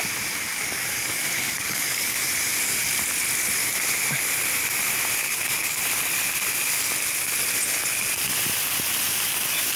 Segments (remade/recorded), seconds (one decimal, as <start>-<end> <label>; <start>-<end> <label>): 0.0-0.5 recorded; 0.5-2.3 remade; 2.3-5.2 recorded; 5.2-5.8 remade; 5.8-9.8 recorded